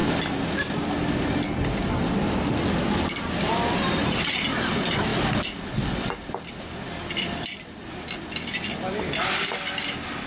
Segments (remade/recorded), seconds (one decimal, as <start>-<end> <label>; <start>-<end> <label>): 0.0-10.3 recorded